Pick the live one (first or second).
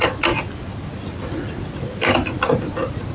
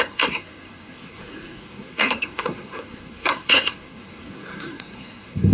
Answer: first